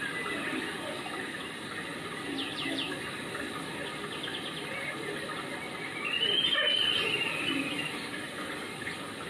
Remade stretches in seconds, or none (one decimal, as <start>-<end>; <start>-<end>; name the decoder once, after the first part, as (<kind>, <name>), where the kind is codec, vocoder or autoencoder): none